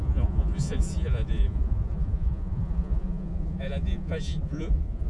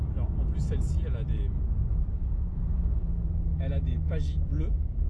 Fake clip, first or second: first